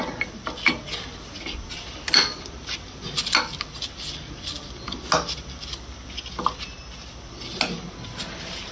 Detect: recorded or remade recorded